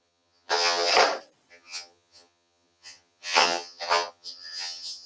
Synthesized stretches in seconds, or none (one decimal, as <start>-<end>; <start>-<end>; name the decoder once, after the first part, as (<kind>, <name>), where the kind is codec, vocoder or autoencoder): 0.0-0.9 (vocoder, HiFi-GAN); 1.5-5.1

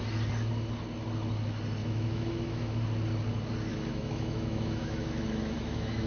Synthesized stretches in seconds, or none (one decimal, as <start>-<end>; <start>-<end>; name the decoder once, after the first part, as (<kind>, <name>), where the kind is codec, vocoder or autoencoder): 1.8-2.8 (autoencoder, DAC-VAE); 3.7-6.1

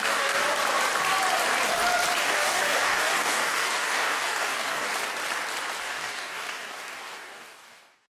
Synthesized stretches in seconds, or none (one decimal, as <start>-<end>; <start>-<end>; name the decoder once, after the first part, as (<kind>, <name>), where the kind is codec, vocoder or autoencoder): 0.0-0.4 (codec, DAC); 2.2-4.9; 5.8-8.2